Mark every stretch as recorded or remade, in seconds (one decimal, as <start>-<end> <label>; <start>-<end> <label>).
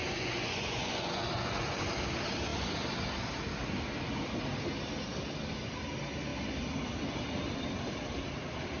0.0-1.8 remade; 1.8-8.8 recorded